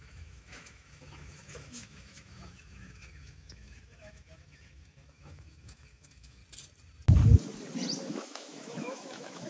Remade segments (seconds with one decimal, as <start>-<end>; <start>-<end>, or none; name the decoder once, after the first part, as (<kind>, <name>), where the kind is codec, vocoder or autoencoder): 0.0-6.4 (autoencoder, DAC-VAE); 8.1-9.5